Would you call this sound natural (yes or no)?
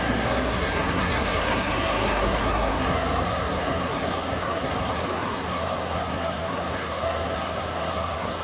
no